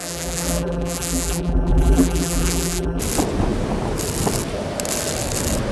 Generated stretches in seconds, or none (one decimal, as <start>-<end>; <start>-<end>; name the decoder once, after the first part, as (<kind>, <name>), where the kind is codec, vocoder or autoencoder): 0.0-3.0 (vocoder, BigVGAN v2)